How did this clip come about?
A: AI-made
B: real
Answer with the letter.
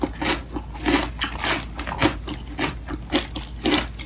B